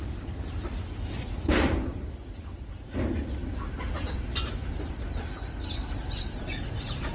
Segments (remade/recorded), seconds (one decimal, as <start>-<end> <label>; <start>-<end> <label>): 0.0-7.1 recorded